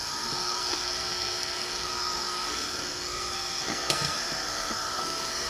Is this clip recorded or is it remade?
remade